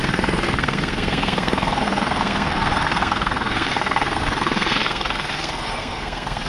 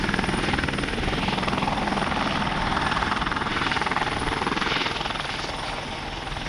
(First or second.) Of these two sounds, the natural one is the second